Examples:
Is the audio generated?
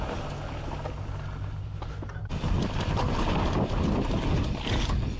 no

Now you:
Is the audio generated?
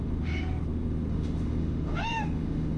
yes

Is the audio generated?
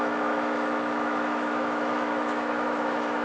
yes